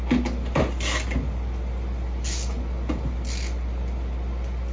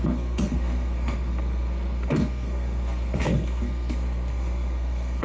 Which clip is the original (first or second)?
first